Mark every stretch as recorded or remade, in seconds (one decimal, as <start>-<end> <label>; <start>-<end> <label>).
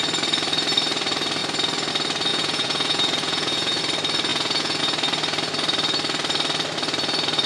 0.0-2.3 recorded; 2.3-3.8 remade; 3.8-4.3 recorded; 4.3-4.8 remade; 4.8-7.5 recorded